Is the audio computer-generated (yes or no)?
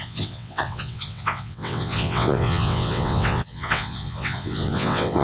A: yes